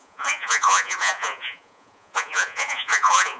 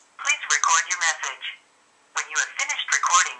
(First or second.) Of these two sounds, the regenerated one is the first